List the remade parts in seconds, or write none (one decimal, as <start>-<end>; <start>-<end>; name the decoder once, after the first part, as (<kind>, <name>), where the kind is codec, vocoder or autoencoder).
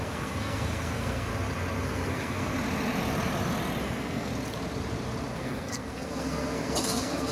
0.0-1.3 (codec, SNAC); 1.8-2.5; 3.8-4.3; 5.3-7.3